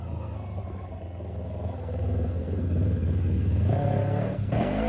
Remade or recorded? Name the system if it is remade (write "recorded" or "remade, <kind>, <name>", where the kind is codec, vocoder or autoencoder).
remade, codec, SNAC